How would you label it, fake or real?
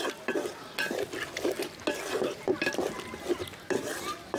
real